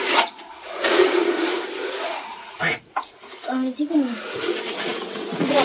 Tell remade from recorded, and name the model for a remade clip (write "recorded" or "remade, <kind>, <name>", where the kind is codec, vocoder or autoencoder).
remade, vocoder, Vocos